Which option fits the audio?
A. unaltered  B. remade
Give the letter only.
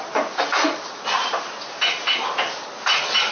A